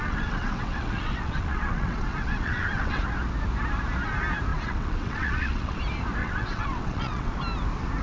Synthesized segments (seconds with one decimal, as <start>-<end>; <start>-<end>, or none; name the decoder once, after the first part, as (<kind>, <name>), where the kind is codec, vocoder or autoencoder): 0.0-3.0 (vocoder, WaveNeXt); 4.5-5.8; 6.2-7.3